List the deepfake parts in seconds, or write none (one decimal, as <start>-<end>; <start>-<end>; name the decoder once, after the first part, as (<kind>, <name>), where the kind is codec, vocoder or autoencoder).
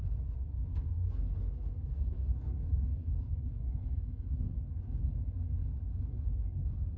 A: 0.7-4.9 (codec, SNAC)